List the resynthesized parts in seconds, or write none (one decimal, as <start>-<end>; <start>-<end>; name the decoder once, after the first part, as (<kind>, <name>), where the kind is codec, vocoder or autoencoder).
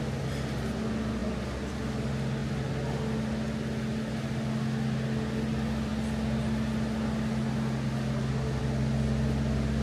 none